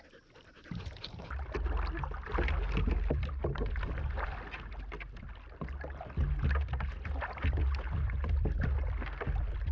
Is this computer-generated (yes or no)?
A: no